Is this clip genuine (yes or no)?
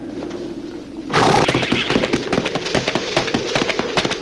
yes